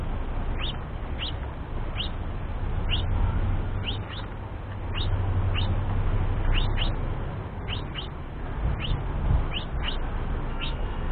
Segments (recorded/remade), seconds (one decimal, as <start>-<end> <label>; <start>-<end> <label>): 0.0-10.5 recorded; 10.5-11.1 remade